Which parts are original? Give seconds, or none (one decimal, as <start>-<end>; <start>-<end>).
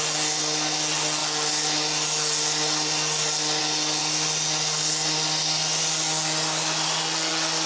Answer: 0.0-7.7